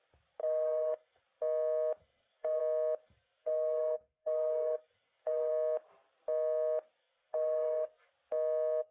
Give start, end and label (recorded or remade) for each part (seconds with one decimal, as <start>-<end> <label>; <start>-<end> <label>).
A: 0.0-0.4 recorded; 0.4-1.2 remade; 1.2-2.0 recorded; 2.0-2.6 remade; 2.6-3.0 recorded; 3.0-5.5 remade; 5.5-7.0 recorded; 7.0-8.1 remade; 8.1-8.9 recorded